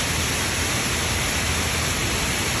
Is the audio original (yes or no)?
yes